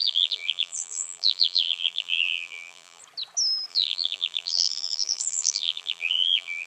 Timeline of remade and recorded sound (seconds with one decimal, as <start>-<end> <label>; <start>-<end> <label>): 0.0-3.0 remade; 3.0-3.7 recorded; 3.7-6.7 remade

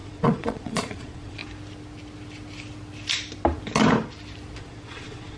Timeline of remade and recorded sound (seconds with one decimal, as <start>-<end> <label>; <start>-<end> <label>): 0.0-1.4 remade; 1.4-4.6 recorded; 4.6-5.4 remade

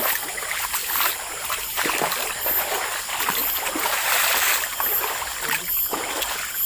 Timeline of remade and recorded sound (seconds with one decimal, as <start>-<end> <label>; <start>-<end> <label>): 0.0-6.7 recorded

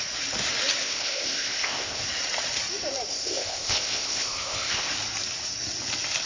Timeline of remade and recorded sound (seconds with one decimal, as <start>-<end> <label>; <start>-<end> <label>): 0.0-0.8 recorded; 0.8-2.0 remade; 2.0-3.1 recorded; 3.1-4.9 remade; 4.9-6.3 recorded

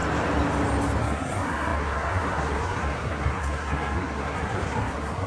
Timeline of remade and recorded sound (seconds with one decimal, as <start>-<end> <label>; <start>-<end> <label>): 0.0-1.0 recorded; 1.0-5.3 remade

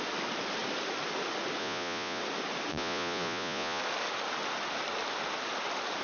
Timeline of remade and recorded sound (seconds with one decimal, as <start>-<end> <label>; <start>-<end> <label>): 0.0-1.6 recorded; 1.6-2.2 remade; 2.2-2.7 recorded; 2.7-3.8 remade; 3.8-6.0 recorded

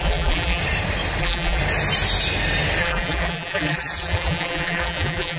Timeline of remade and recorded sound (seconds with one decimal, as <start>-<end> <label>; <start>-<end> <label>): 0.0-0.6 remade; 0.6-1.2 recorded; 1.2-1.6 remade; 1.6-2.8 recorded; 2.8-5.4 remade

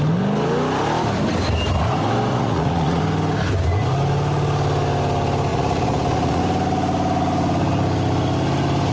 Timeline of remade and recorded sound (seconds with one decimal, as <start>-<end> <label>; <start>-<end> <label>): 0.0-2.3 recorded; 2.3-3.0 remade; 3.0-5.5 recorded; 5.5-6.4 remade; 6.4-8.9 recorded